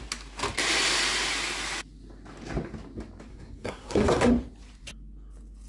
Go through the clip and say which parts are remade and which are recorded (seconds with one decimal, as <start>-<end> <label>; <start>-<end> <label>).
0.0-3.3 recorded; 3.3-4.3 remade; 4.3-5.7 recorded